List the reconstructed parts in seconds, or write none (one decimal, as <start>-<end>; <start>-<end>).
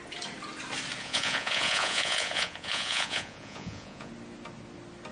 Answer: 1.0-4.1